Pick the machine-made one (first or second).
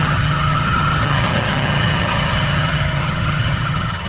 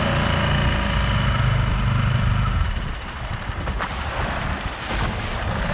first